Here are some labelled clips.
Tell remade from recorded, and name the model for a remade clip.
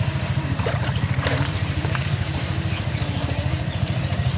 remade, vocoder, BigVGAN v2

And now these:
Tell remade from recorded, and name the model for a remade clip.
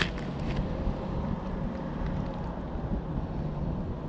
recorded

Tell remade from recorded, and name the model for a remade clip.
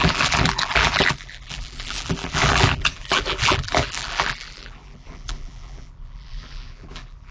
remade, vocoder, BigVGAN v2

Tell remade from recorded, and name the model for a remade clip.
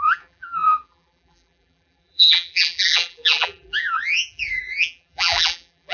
remade, vocoder, BigVGAN v2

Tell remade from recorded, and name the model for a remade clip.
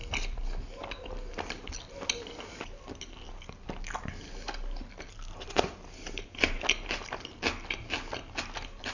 recorded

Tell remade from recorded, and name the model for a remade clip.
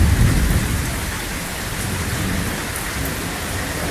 recorded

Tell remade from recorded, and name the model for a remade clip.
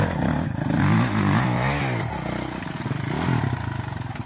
recorded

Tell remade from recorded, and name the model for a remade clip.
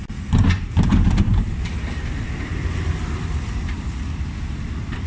remade, vocoder, BigVGAN v2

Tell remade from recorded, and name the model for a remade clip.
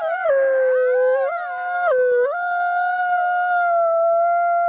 recorded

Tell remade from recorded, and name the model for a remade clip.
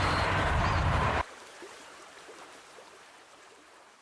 remade, vocoder, BigVGAN v2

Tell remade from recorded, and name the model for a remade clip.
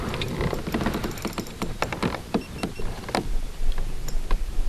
recorded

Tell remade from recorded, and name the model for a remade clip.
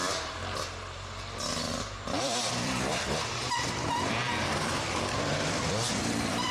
remade, vocoder, BigVGAN v2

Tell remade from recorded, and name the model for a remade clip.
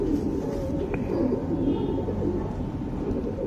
recorded